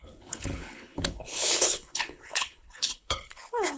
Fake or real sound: fake